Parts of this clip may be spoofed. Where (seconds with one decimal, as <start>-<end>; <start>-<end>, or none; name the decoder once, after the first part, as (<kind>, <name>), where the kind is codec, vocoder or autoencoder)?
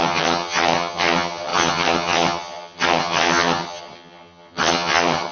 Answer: 0.0-5.3 (vocoder, HiFi-GAN)